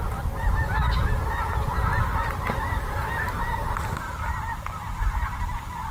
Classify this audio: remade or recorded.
recorded